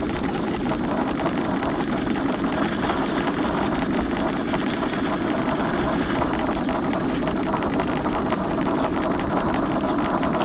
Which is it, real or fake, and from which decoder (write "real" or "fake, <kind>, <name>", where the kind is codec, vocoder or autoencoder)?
real